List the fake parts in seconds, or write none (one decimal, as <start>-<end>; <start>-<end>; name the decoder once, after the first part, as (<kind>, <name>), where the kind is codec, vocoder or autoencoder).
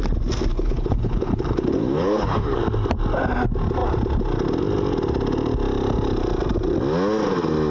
0.5-2.6 (codec, HILCodec)